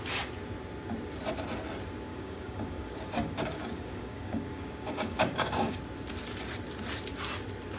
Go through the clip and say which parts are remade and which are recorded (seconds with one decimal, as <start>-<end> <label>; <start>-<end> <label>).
0.0-2.1 recorded; 2.1-5.8 remade; 5.8-7.8 recorded